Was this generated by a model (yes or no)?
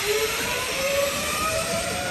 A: yes